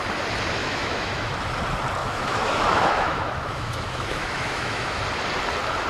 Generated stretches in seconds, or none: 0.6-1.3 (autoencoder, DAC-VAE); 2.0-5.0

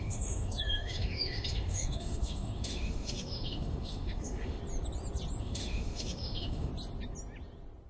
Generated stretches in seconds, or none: 0.0-4.6 (autoencoder, DAC-VAE); 5.4-6.7

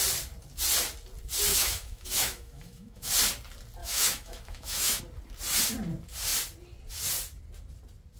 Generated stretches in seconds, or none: 1.5-3.1 (autoencoder, DAC-VAE); 3.8-5.0

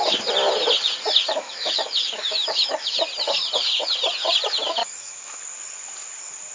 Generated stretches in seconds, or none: 1.4-3.0 (autoencoder, DAC-VAE); 4.8-5.4

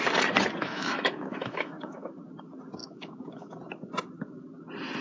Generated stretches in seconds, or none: 0.6-2.1 (autoencoder, DAC-VAE); 2.8-3.6

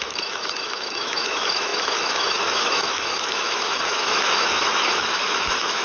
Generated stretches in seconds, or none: 0.0-5.8 (autoencoder, DAC-VAE)

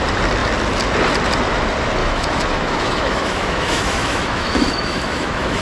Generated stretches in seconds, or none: 2.0-5.6 (autoencoder, DAC-VAE)

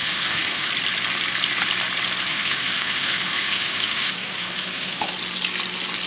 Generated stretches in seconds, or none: 0.0-0.7 (autoencoder, DAC-VAE); 2.3-5.1